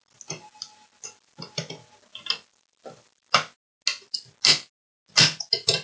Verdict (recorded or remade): recorded